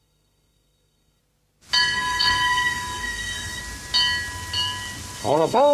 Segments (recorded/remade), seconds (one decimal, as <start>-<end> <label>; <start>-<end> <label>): 0.0-1.2 remade; 1.2-1.8 recorded; 1.8-3.6 remade; 3.6-5.2 recorded; 5.2-5.7 remade